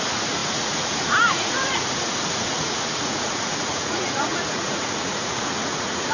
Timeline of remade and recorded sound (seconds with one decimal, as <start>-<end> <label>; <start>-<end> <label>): 0.0-6.1 remade